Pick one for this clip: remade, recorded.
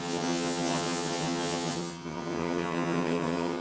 remade